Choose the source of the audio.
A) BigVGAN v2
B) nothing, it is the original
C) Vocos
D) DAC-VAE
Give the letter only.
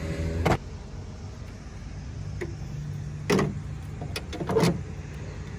B